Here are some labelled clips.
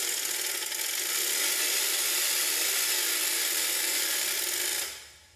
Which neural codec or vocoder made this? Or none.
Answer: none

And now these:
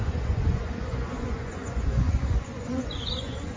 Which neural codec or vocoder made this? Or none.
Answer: vocoder, Vocos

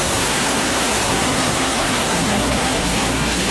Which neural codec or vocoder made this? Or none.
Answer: codec, SNAC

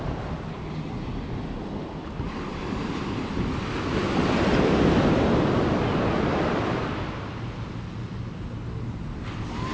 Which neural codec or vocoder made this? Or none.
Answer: none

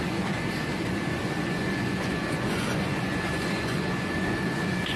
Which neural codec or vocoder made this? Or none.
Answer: vocoder, Vocos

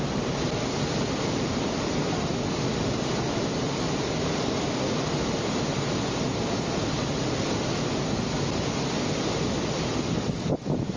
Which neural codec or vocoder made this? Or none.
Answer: none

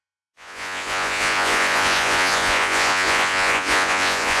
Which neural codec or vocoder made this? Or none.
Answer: vocoder, Vocos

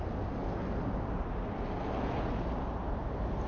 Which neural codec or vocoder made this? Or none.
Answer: none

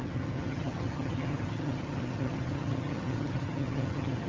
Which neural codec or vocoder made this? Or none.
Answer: vocoder, HiFi-GAN